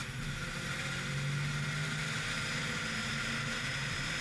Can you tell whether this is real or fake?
real